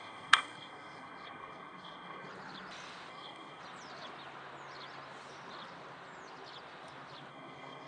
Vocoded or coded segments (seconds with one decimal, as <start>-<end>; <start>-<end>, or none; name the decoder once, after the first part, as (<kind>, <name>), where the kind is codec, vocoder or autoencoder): 0.0-2.3 (codec, SNAC); 3.1-3.6; 7.3-7.9